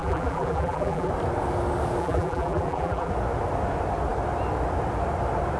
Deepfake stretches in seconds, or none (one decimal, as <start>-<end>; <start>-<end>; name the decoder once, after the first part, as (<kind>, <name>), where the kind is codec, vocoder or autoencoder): 0.0-1.1 (vocoder, BigVGAN v2); 2.0-3.1